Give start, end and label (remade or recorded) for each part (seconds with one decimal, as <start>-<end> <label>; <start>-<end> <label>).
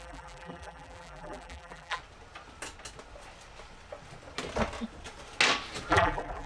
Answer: 0.0-2.0 remade; 2.0-5.9 recorded; 5.9-6.5 remade